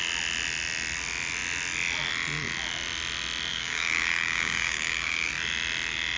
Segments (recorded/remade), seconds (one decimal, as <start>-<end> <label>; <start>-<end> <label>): 0.0-3.5 recorded; 3.5-5.3 remade; 5.3-6.2 recorded